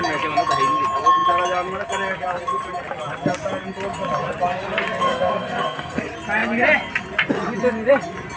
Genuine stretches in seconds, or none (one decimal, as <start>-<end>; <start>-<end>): 0.0-5.0; 6.0-8.4